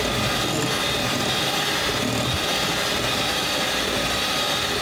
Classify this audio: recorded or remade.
recorded